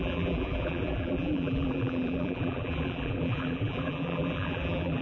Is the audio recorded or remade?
remade